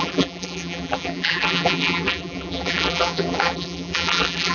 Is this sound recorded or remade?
remade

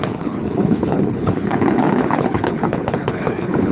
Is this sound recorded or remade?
remade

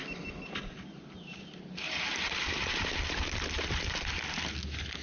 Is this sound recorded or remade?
recorded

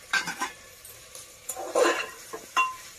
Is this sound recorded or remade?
remade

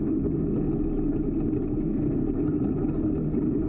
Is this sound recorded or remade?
recorded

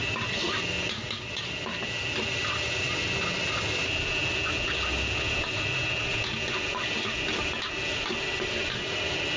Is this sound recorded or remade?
recorded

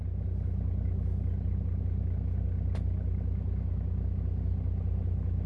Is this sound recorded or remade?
recorded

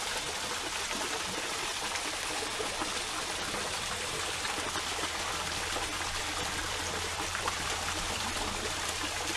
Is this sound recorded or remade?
remade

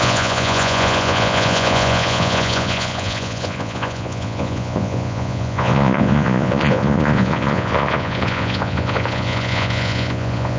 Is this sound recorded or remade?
remade